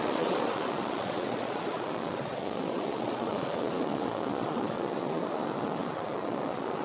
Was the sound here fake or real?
fake